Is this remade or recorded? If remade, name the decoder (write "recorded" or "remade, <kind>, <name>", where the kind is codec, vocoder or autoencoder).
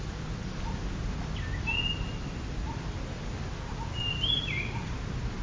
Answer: recorded